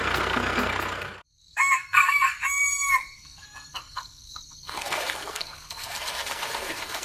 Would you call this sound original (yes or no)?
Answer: no